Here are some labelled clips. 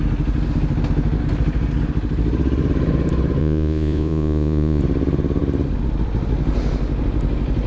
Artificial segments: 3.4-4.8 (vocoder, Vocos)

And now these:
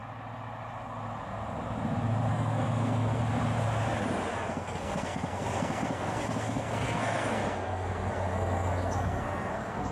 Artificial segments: 2.3-3.2 (codec, SNAC); 4.3-9.9

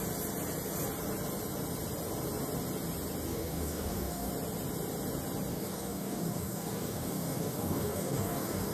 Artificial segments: 3.3-4.3 (codec, DAC); 5.5-8.7

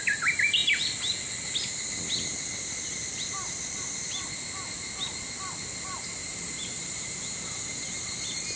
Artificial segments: 6.2-7.6 (vocoder, BigVGAN v2)

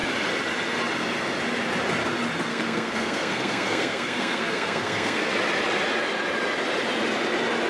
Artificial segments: 2.5-5.3 (codec, SNAC)

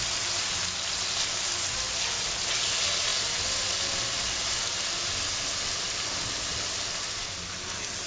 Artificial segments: none

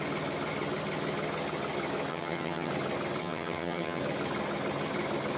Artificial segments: 2.1-2.7 (vocoder, HiFi-GAN); 3.2-4.0

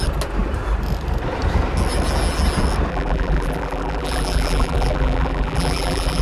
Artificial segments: 2.9-6.2 (vocoder, BigVGAN v2)